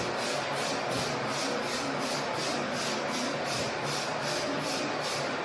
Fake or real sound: real